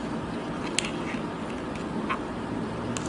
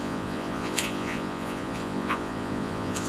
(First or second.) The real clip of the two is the first